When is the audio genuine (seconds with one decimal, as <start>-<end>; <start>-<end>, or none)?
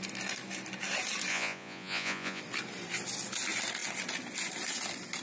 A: 0.0-1.3; 2.4-5.2